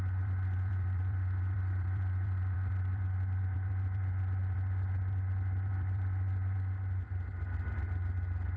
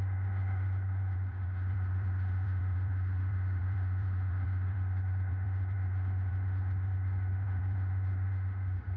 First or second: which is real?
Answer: first